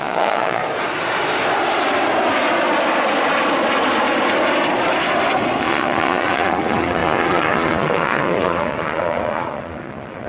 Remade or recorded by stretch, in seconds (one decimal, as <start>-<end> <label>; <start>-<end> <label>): 0.0-0.6 remade; 0.6-5.6 recorded; 5.6-10.3 remade